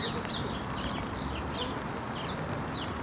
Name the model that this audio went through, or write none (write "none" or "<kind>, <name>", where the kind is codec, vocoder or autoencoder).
none